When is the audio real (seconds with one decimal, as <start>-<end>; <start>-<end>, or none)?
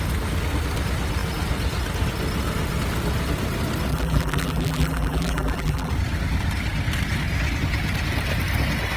0.0-3.9; 5.9-9.0